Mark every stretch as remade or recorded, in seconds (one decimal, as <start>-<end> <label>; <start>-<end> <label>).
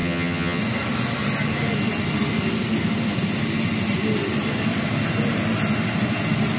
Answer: 0.0-0.6 remade; 0.6-6.6 recorded